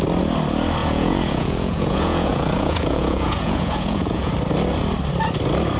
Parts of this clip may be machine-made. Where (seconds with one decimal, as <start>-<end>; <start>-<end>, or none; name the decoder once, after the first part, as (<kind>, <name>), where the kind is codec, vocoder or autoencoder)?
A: 0.8-4.3 (vocoder, Vocos)